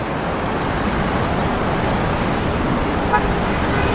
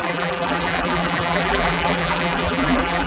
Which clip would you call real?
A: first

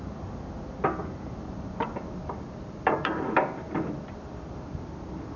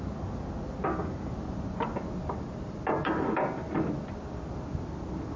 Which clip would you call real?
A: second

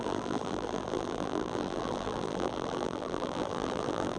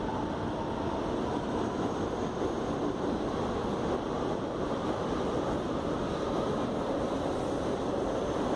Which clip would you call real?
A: second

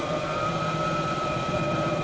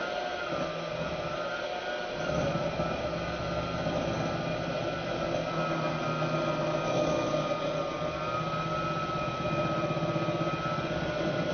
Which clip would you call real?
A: second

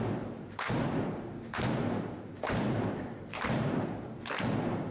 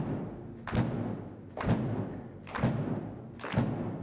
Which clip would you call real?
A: second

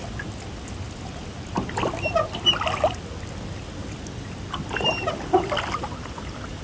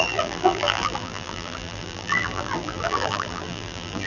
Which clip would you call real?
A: first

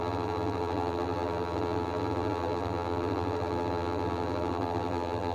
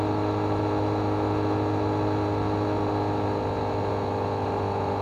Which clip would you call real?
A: second